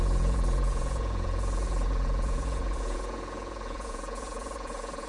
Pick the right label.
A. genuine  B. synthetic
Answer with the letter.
B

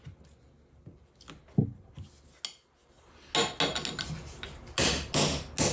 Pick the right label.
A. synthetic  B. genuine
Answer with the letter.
B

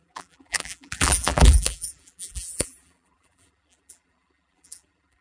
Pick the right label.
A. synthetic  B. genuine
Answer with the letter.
A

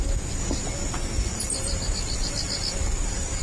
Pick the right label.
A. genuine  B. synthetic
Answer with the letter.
A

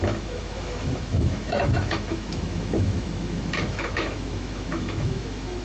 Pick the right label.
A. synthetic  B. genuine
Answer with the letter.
A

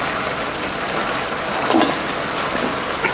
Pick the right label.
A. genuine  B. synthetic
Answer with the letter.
A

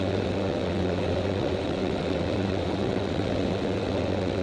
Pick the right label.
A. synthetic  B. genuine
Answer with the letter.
A